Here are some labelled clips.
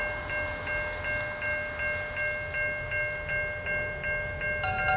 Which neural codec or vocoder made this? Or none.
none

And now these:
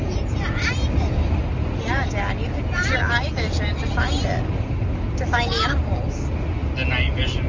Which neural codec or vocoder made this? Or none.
none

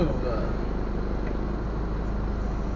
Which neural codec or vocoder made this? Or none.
none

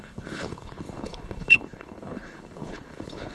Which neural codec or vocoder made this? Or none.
codec, HILCodec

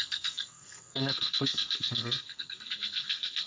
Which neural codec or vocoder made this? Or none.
codec, SNAC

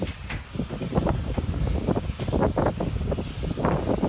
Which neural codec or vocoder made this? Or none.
none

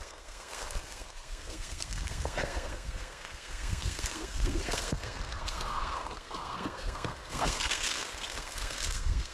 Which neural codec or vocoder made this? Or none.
codec, SNAC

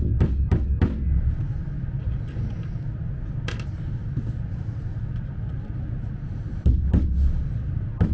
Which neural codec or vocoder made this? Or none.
none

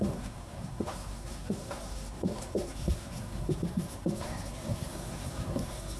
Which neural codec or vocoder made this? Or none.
codec, SNAC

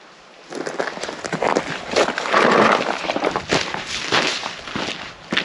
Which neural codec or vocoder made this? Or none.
none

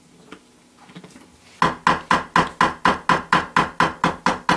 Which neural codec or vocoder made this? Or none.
none